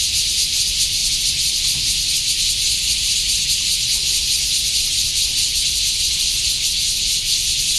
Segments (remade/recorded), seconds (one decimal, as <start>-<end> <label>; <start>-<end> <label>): 0.0-1.0 remade; 1.0-5.7 recorded; 5.7-7.8 remade